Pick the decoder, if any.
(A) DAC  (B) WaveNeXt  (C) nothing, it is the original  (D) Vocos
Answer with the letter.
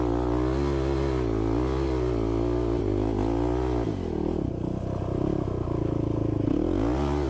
C